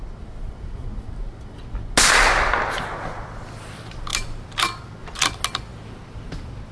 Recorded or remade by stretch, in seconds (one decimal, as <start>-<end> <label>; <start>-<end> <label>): 0.0-6.7 recorded